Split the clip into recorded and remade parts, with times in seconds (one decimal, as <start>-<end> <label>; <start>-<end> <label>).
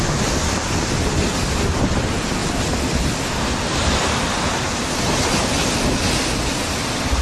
0.0-7.2 recorded